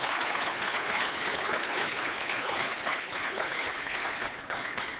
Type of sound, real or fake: fake